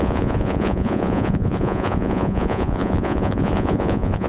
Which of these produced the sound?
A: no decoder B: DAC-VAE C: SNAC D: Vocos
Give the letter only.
D